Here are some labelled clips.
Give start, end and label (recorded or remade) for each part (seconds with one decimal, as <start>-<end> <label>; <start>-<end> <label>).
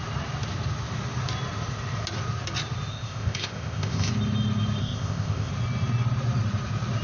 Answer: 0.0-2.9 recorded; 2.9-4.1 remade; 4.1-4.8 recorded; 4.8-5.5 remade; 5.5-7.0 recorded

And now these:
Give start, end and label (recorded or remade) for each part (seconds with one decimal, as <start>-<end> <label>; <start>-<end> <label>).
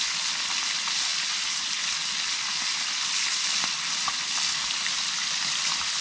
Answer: 0.0-6.0 recorded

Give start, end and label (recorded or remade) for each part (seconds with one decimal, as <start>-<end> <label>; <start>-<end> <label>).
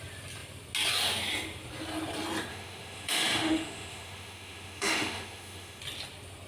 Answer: 0.0-2.5 recorded; 2.5-5.8 remade; 5.8-6.5 recorded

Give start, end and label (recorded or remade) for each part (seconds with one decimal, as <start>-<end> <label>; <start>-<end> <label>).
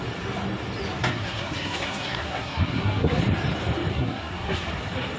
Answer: 0.0-1.0 recorded; 1.0-3.2 remade; 3.2-3.9 recorded; 3.9-4.7 remade; 4.7-5.2 recorded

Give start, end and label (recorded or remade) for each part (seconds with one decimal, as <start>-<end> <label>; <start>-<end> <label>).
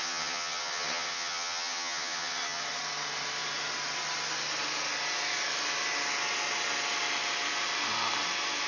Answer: 0.0-2.6 remade; 2.6-8.7 recorded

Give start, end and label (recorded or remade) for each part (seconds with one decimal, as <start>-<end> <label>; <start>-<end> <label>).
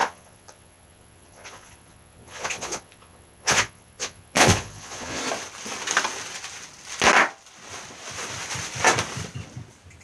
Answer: 0.0-5.2 remade; 5.2-10.0 recorded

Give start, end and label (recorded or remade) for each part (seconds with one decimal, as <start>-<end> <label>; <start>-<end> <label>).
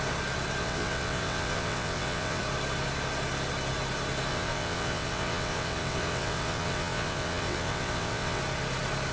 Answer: 0.0-0.6 recorded; 0.6-2.4 remade; 2.4-4.3 recorded; 4.3-8.4 remade; 8.4-9.1 recorded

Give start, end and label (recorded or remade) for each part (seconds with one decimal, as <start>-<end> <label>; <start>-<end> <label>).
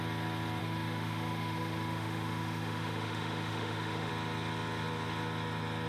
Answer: 0.0-0.6 recorded; 0.6-4.1 remade; 4.1-5.9 recorded